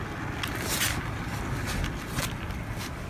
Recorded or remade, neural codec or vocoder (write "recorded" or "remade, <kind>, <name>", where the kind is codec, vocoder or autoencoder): recorded